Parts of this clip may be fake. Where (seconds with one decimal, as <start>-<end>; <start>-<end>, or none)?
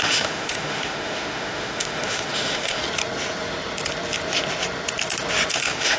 0.0-2.8; 5.5-6.0